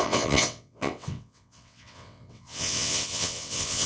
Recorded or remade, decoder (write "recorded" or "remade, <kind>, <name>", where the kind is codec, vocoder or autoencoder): remade, vocoder, WaveNeXt